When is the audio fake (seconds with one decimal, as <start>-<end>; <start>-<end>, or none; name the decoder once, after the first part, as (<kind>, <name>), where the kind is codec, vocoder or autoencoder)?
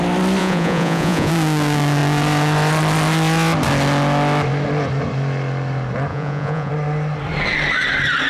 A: 0.4-1.3 (vocoder, Vocos); 6.1-6.7